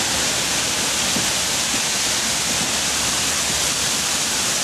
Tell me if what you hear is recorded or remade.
recorded